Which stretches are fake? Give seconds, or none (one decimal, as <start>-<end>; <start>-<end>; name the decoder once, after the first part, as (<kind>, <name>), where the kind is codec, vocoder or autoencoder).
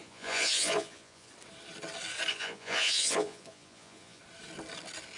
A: 0.0-1.3 (vocoder, Vocos); 2.3-4.2